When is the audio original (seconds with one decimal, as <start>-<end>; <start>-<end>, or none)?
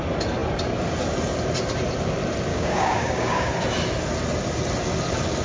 0.0-2.5; 3.5-5.4